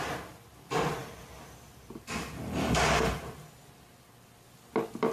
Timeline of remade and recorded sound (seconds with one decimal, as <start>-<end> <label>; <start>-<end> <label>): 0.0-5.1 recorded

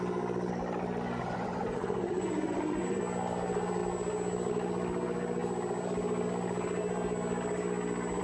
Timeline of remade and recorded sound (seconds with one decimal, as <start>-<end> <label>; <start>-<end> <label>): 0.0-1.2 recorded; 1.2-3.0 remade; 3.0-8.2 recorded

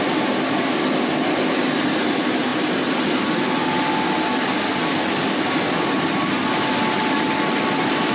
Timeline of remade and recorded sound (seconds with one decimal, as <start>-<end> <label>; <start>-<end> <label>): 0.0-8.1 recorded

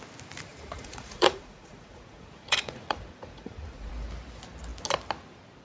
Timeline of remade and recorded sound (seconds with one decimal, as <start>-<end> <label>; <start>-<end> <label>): 0.0-0.5 recorded; 0.5-3.9 remade; 3.9-5.6 recorded